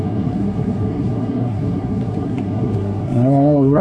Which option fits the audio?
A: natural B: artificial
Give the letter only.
B